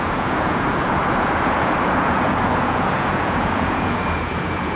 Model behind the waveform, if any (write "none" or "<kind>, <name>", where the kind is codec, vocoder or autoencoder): vocoder, Vocos